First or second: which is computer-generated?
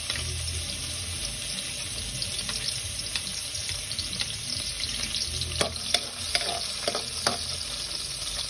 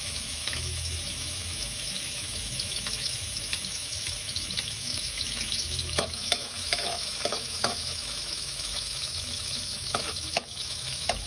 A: second